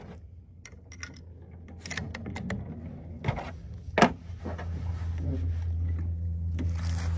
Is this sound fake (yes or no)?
no